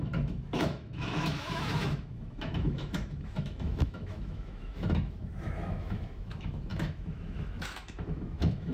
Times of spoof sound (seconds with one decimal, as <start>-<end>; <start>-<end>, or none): 0.0-8.7